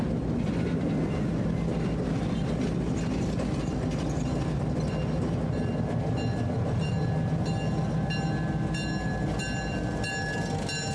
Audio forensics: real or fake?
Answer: real